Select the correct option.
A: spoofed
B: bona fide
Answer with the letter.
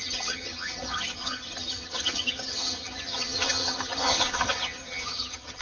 A